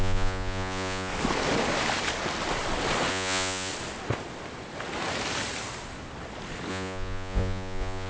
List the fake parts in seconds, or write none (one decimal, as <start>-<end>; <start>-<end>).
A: 0.0-1.1; 3.1-3.7; 6.7-8.1